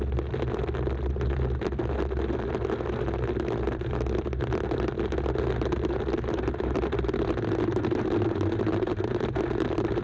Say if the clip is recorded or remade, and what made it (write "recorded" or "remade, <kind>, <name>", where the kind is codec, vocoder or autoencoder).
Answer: recorded